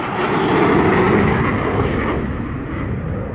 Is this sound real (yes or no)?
yes